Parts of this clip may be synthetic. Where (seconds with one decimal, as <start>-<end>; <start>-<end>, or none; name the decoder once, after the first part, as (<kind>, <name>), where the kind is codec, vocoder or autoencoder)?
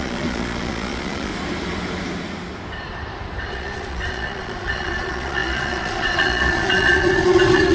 0.0-1.3 (vocoder, Vocos); 3.5-7.7